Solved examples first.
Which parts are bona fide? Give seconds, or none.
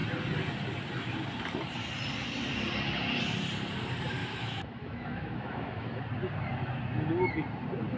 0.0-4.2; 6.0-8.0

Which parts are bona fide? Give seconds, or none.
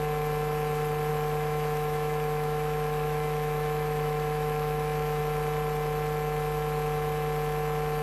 0.0-1.1; 5.2-8.0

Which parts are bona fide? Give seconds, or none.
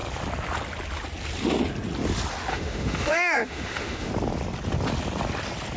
0.0-2.5; 4.1-5.8